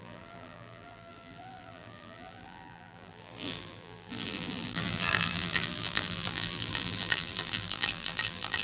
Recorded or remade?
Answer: remade